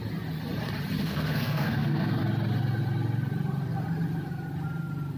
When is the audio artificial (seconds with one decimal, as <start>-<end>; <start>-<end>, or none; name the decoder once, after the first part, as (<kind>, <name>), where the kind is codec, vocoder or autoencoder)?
1.0-2.2 (codec, SNAC)